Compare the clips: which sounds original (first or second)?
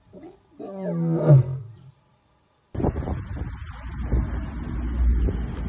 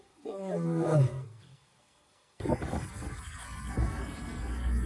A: first